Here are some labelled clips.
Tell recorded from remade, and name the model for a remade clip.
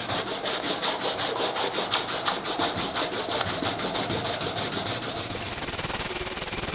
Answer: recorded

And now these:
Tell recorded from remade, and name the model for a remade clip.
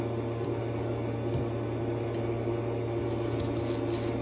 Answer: recorded